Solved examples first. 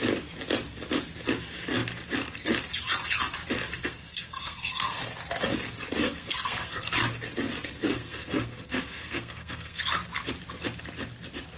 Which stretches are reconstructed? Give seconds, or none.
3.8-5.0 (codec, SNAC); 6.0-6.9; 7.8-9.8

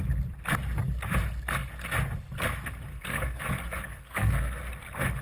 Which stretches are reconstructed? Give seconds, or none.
2.9-3.4 (codec, SNAC); 3.9-4.6

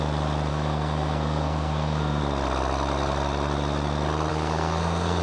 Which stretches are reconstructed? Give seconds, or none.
0.5-2.2 (codec, SNAC); 4.3-5.2

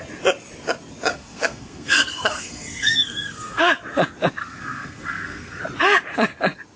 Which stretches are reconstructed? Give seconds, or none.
1.1-3.6 (codec, SNAC); 4.4-5.6

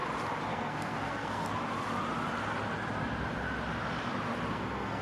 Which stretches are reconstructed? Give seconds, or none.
0.5-1.5 (codec, SNAC); 4.5-5.0

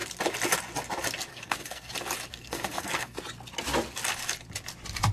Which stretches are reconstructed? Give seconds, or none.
1.3-1.9 (codec, SNAC); 2.3-3.2